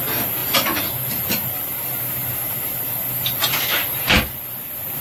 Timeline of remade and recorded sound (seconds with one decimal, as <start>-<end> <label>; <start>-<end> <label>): 0.0-5.0 recorded